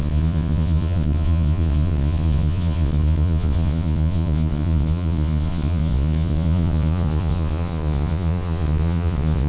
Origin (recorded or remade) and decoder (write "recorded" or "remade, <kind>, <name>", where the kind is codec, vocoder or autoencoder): remade, vocoder, Vocos